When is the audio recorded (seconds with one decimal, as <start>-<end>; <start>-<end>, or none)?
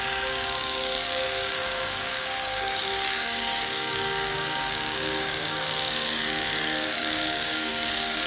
none